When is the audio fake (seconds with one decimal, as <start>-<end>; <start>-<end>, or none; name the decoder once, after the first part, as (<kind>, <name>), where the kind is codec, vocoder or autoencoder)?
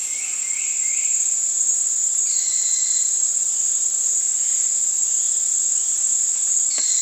0.0-4.2 (vocoder, BigVGAN v2); 5.0-6.3